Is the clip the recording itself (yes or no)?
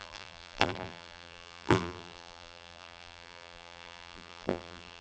no